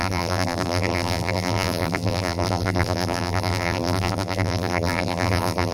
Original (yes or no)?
no